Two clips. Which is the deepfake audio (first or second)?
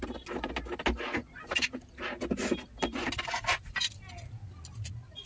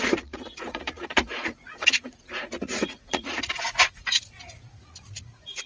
second